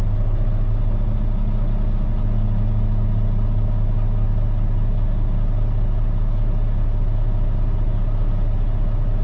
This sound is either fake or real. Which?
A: real